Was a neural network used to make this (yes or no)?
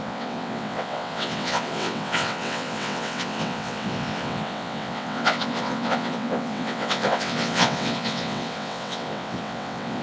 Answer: yes